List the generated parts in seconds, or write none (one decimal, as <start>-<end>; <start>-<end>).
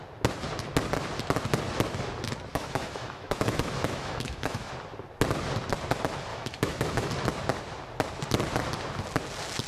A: 2.5-4.7; 6.3-7.1